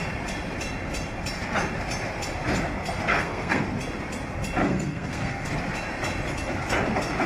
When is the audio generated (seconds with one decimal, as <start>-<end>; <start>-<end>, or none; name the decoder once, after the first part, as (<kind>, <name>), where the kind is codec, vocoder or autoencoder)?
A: 3.1-3.6 (codec, SNAC); 4.6-5.5